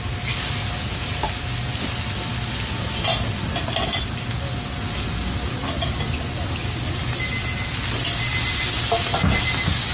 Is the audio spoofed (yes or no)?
no